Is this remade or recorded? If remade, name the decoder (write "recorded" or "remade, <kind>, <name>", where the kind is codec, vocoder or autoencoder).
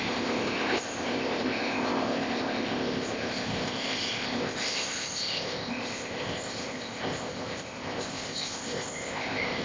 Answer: remade, codec, ZipCodec